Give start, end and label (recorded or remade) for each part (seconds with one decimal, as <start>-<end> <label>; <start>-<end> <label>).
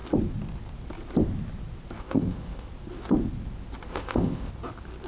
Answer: 0.0-2.0 recorded; 2.0-2.7 remade; 2.7-3.9 recorded; 3.9-4.5 remade; 4.5-5.1 recorded